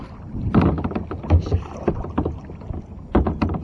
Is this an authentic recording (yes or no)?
yes